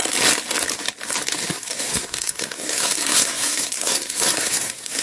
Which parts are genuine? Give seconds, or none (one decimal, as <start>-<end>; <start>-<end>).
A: 0.0-1.5